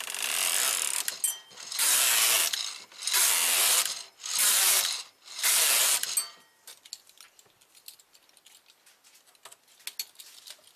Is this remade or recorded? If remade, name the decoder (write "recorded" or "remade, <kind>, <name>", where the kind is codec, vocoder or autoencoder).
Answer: recorded